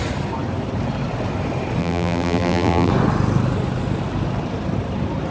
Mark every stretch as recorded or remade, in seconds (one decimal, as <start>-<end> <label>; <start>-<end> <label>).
0.0-1.8 recorded; 1.8-2.9 remade; 2.9-5.3 recorded